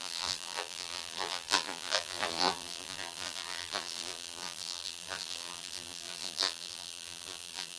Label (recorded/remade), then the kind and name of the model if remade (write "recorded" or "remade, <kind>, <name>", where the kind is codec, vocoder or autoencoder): remade, vocoder, BigVGAN v2